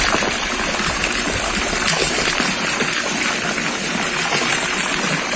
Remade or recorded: recorded